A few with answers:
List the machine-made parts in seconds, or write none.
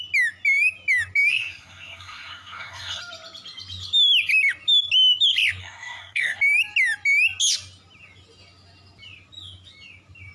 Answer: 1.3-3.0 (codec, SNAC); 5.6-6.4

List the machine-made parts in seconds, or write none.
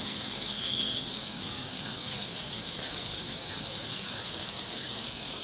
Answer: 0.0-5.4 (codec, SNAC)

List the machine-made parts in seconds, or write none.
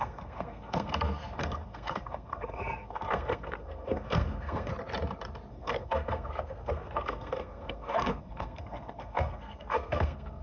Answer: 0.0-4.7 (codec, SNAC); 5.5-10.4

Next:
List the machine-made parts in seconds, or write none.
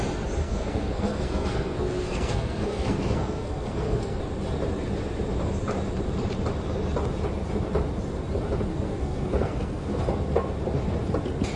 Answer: 0.4-4.2 (codec, SNAC); 8.7-10.0